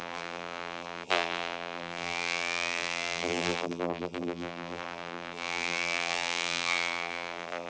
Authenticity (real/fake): fake